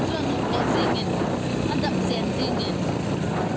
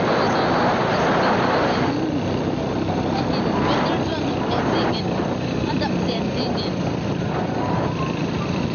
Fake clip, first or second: second